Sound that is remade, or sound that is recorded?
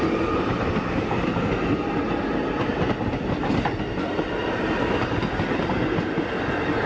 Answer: recorded